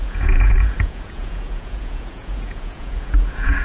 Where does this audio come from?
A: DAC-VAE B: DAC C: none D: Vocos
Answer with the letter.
D